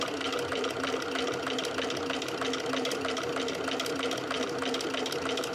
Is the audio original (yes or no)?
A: yes